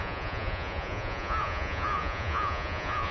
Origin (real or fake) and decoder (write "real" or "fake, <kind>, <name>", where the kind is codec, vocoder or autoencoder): fake, vocoder, Vocos